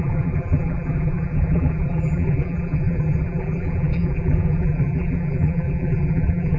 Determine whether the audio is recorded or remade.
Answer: remade